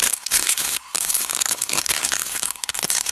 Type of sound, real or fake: fake